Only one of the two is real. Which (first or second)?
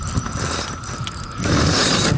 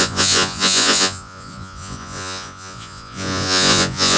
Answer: first